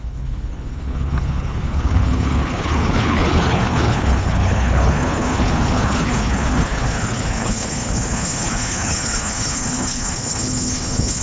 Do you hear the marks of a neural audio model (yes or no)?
yes